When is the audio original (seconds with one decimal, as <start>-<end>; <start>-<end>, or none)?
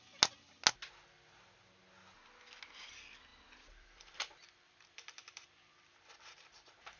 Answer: 0.0-3.3